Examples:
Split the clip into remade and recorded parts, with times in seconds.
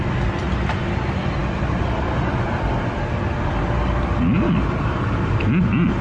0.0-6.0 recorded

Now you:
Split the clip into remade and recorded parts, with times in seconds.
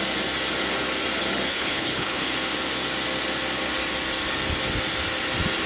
0.0-1.5 recorded; 1.5-2.3 remade; 2.3-5.7 recorded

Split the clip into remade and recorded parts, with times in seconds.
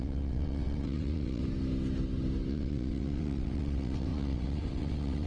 0.0-1.4 remade; 1.4-2.5 recorded; 2.5-5.3 remade